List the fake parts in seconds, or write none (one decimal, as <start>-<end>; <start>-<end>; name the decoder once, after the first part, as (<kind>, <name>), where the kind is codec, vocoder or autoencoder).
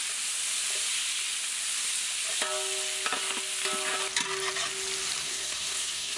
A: 5.2-6.2 (codec, SNAC)